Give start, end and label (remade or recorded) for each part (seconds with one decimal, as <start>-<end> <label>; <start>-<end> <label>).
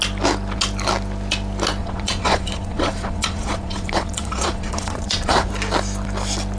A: 0.0-1.8 recorded; 1.8-5.5 remade; 5.5-6.6 recorded